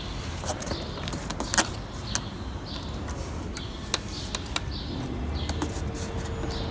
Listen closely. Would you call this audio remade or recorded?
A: recorded